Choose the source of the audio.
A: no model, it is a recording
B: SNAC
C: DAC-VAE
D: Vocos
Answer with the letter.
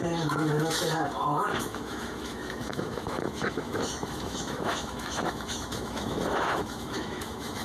C